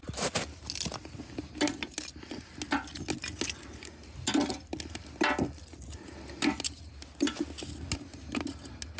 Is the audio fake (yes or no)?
no